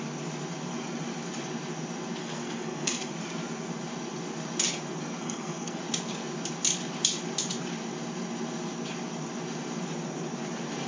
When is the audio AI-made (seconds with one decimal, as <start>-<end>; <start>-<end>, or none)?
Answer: 2.2-3.1; 5.2-5.8